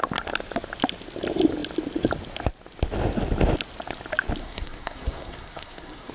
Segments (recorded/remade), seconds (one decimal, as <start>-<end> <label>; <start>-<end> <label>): 0.0-4.4 recorded; 4.4-6.1 remade